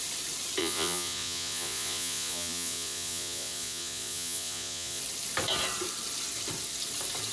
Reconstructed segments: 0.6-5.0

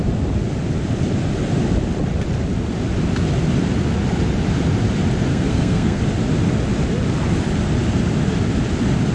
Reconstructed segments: 5.3-6.0

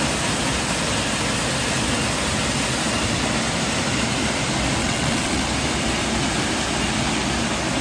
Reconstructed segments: 4.8-5.4

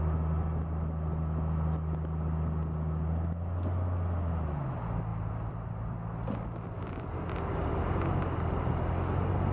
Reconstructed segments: none

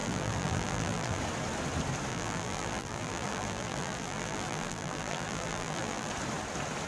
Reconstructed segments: 0.0-1.2; 2.1-6.1

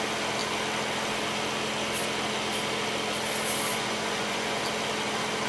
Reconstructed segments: 3.7-4.6

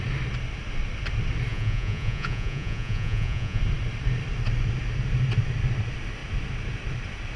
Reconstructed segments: 1.5-3.6